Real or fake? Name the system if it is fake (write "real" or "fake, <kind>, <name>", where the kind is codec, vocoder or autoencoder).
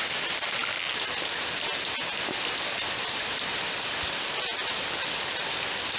real